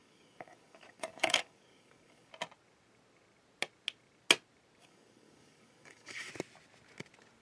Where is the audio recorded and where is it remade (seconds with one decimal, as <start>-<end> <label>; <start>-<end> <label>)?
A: 0.0-2.3 remade; 2.3-4.8 recorded; 4.8-6.3 remade; 6.3-7.4 recorded